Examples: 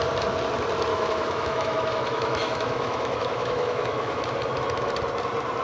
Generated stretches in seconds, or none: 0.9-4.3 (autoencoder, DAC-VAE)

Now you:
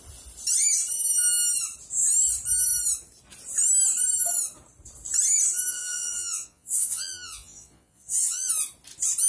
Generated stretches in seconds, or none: 5.7-8.5 (vocoder, Vocos)

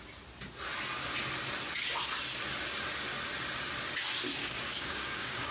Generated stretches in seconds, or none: 4.4-5.5 (codec, DAC)

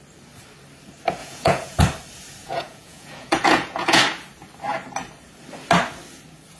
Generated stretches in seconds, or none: 1.2-1.8 (vocoder, Vocos); 2.4-4.0

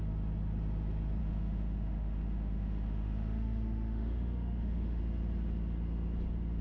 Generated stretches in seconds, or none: 1.2-5.0 (autoencoder, DAC-VAE)

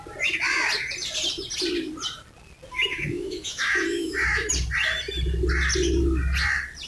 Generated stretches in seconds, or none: 2.7-4.5 (autoencoder, DAC-VAE)